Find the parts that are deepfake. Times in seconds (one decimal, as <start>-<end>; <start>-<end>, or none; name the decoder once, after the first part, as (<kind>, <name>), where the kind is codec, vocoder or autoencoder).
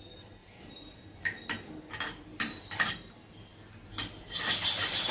2.3-2.9 (vocoder, BigVGAN v2)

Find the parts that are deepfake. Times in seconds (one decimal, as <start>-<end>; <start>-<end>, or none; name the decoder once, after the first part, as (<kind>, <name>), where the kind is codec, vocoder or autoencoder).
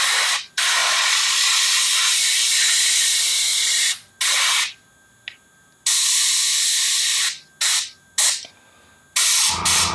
0.8-1.8 (vocoder, Vocos); 3.5-4.1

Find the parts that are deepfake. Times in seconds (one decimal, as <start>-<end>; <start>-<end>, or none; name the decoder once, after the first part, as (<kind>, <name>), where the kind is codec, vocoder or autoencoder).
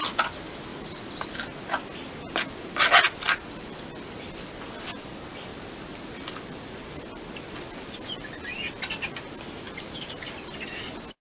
none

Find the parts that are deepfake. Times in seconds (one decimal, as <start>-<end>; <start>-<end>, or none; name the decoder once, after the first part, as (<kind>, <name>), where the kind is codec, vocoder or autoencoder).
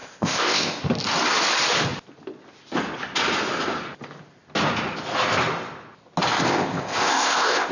0.0-0.8 (codec, ZipCodec); 6.5-7.7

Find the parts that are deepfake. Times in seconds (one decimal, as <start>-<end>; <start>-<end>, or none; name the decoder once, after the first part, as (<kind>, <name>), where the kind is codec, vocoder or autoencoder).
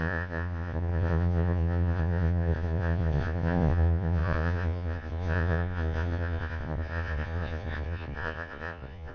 0.0-9.1 (vocoder, Vocos)